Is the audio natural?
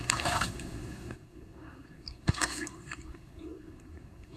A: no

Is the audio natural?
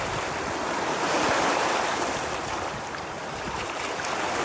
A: yes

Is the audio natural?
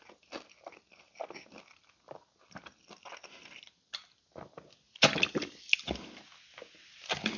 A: yes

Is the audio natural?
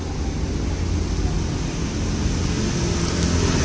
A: yes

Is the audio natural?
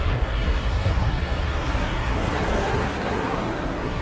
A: no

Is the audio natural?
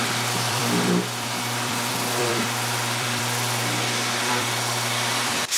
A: no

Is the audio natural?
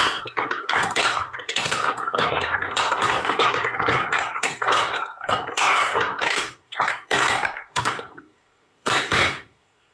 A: no